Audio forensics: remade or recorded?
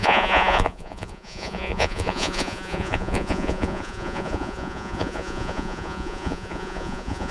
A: remade